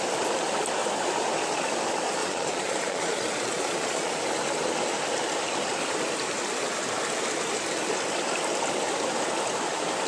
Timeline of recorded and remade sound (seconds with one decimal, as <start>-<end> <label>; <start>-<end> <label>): 0.0-2.2 recorded; 2.2-4.1 remade; 4.1-10.1 recorded